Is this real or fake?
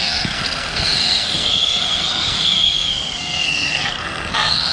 fake